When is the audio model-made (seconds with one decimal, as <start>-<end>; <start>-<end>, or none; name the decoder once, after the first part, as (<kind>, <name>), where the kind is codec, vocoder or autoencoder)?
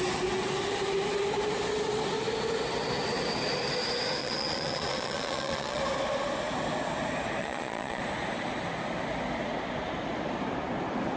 4.2-5.8 (vocoder, Vocos); 7.4-8.0